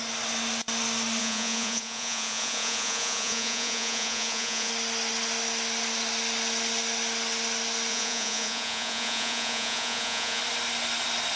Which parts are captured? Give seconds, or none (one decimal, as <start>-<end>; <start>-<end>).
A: 0.0-1.2; 4.7-7.9; 10.4-11.4